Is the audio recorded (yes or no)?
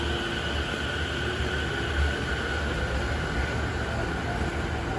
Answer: yes